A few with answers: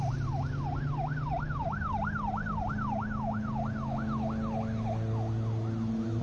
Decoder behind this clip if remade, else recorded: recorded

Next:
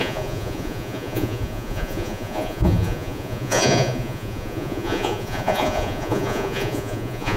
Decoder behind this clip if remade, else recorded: remade, vocoder, Vocos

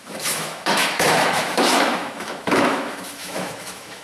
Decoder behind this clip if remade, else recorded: remade, autoencoder, DAC-VAE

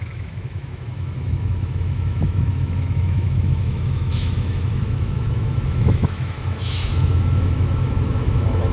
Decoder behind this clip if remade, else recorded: remade, autoencoder, DAC-VAE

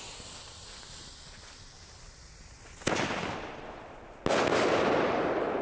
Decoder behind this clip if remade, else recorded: recorded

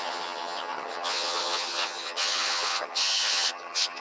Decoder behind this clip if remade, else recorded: remade, vocoder, HiFi-GAN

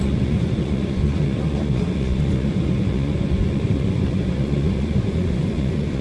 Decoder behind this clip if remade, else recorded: remade, vocoder, Vocos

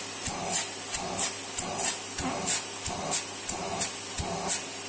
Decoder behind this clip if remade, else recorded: recorded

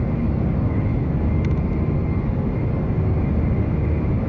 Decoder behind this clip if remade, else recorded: recorded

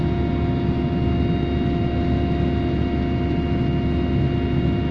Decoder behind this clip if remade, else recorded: recorded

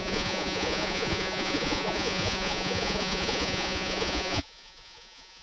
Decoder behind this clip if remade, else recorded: remade, vocoder, Vocos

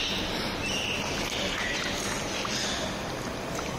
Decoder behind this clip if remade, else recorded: recorded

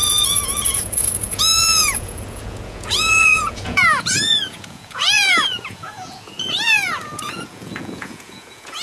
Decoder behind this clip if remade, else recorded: remade, vocoder, Vocos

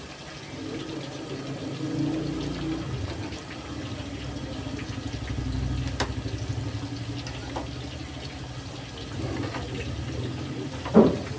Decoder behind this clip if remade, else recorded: recorded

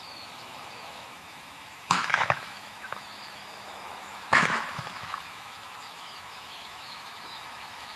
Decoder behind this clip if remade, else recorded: remade, autoencoder, DAC-VAE